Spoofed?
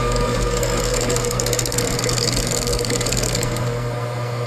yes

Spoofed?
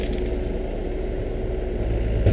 no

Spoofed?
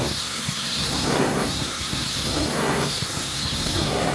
yes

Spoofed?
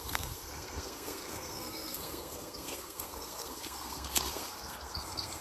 yes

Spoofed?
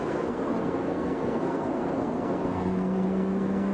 yes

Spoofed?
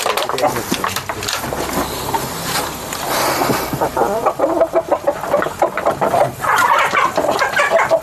no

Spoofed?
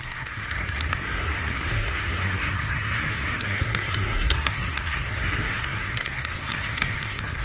yes